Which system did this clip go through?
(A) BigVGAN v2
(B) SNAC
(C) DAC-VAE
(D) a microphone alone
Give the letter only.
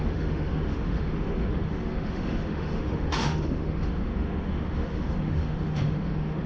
C